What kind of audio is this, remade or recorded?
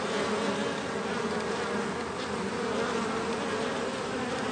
recorded